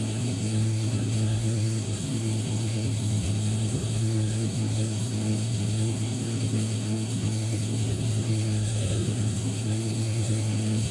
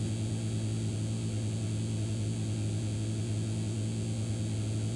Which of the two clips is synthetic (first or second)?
first